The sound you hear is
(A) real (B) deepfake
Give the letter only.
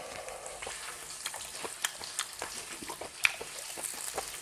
A